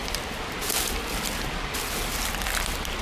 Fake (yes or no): no